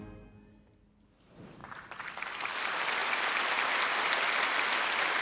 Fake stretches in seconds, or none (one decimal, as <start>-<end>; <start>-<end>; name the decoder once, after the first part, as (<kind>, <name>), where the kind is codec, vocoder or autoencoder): none